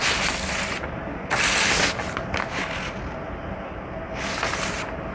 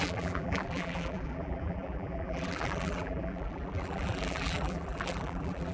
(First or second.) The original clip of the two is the first